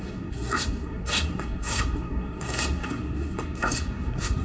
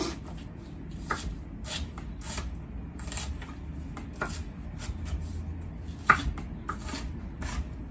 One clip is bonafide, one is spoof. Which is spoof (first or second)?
first